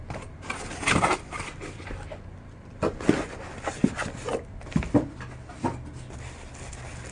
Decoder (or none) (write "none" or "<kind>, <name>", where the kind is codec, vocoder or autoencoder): none